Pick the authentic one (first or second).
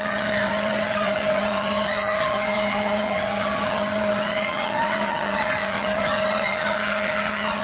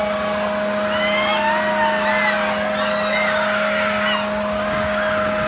second